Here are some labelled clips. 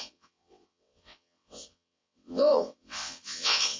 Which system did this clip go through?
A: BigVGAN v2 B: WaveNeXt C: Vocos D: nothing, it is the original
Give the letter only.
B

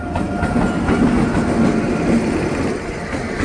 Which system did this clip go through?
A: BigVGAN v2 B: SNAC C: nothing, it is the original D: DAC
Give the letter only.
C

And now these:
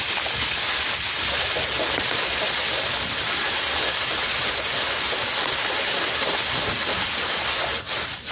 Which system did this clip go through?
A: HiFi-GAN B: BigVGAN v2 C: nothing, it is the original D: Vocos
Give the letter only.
C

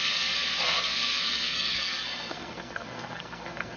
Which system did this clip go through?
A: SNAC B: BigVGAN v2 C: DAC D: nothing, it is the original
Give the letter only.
A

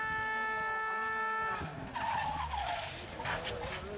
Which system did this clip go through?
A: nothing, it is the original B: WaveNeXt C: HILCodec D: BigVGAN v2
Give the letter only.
A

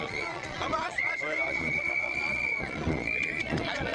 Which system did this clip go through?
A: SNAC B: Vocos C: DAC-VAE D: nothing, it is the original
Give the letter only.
B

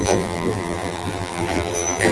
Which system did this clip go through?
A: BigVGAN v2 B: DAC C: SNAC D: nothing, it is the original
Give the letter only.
A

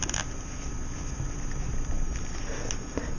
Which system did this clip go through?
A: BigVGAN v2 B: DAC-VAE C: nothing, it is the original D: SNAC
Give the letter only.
C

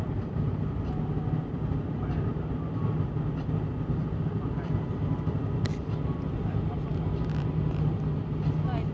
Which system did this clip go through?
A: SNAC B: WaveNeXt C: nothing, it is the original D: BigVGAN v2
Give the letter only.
C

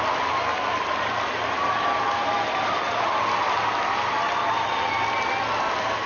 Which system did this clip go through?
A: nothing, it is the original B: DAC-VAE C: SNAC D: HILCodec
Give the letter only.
A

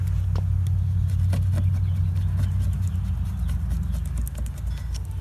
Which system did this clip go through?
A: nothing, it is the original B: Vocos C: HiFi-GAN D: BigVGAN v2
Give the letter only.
A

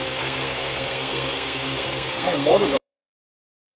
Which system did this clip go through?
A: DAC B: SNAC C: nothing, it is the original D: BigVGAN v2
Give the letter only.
B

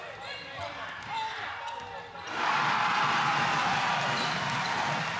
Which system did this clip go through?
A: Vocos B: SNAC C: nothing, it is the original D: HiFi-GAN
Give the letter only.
C